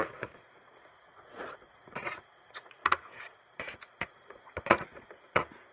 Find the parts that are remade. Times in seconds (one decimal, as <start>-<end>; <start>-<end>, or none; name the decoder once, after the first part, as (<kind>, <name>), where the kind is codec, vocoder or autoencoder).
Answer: 0.0-5.7 (vocoder, Vocos)